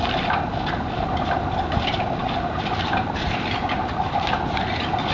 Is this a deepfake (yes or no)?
no